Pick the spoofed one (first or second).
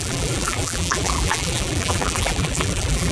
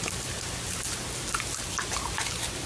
first